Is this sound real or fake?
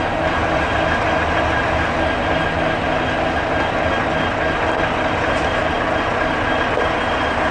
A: real